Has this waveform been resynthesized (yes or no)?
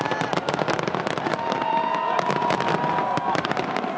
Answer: no